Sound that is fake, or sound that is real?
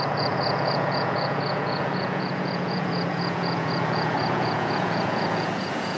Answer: fake